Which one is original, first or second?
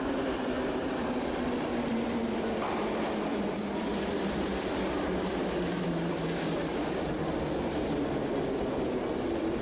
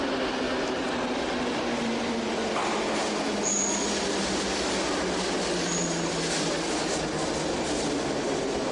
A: second